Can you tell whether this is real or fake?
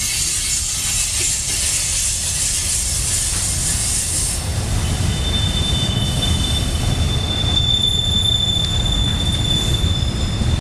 real